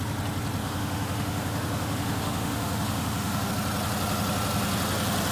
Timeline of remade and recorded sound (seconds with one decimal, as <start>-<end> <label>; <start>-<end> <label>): 0.0-0.6 recorded; 0.6-3.5 remade; 3.5-5.3 recorded